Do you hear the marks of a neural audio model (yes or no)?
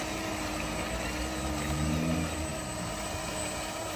no